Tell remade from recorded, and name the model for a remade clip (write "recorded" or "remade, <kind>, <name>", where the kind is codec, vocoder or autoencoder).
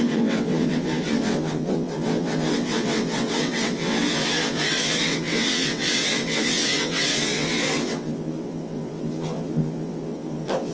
remade, vocoder, WaveNeXt